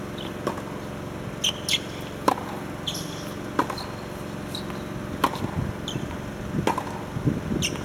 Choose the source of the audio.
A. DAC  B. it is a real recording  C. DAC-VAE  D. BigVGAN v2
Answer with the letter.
B